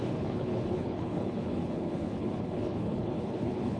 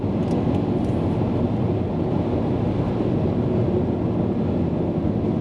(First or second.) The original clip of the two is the second